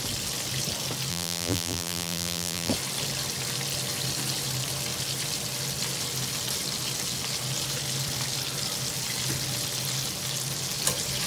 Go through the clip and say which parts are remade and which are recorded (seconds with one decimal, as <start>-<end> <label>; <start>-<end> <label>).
0.0-1.1 recorded; 1.1-2.7 remade; 2.7-11.3 recorded